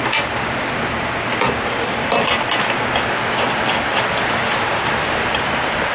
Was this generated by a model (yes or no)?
no